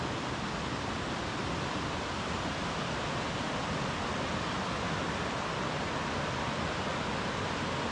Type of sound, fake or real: real